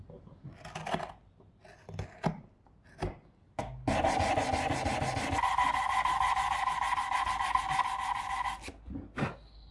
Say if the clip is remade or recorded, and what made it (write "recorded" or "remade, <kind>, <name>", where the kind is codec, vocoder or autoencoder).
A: recorded